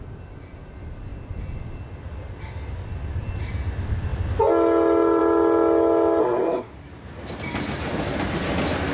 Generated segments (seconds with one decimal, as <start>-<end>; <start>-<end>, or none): 6.2-6.7